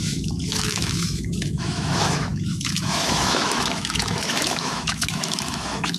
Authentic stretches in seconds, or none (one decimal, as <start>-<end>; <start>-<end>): none